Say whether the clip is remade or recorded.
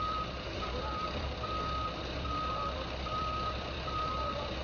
remade